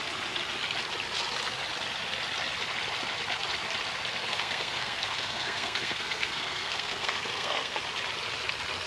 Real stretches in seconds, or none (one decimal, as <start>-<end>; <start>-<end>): 0.0-4.2; 7.8-8.9